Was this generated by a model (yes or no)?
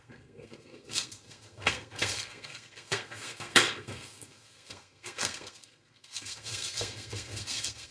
yes